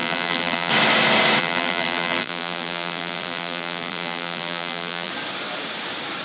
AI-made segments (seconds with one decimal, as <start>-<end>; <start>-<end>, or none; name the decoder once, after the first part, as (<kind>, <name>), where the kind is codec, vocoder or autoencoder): 0.0-0.7 (vocoder, BigVGAN v2); 1.4-5.1